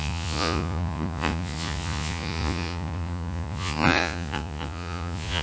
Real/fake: fake